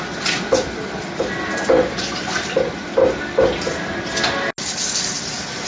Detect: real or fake real